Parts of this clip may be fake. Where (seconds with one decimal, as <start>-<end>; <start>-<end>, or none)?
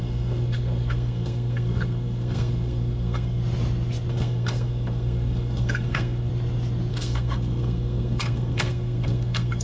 0.0-3.4; 4.1-6.3; 6.9-9.6